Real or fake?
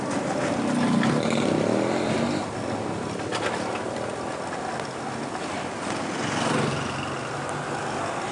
real